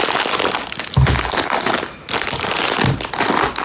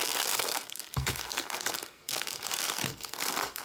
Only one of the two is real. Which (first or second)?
first